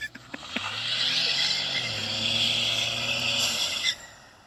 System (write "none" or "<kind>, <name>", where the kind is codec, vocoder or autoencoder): none